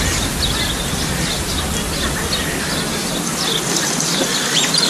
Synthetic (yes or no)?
no